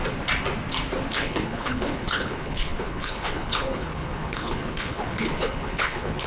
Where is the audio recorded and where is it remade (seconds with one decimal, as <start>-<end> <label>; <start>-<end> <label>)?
0.0-1.1 recorded; 1.1-6.3 remade